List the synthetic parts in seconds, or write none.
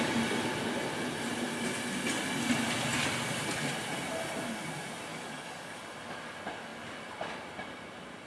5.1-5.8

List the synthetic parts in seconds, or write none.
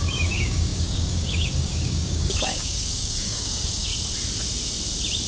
0.0-3.9